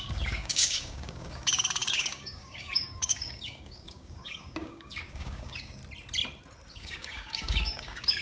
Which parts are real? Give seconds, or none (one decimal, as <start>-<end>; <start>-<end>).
5.8-6.7